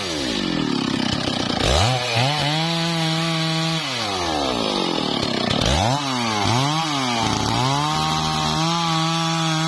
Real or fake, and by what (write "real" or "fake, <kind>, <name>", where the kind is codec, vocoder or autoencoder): real